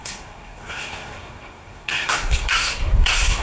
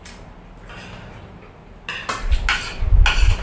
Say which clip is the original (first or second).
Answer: second